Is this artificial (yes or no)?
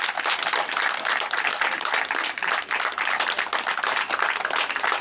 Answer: no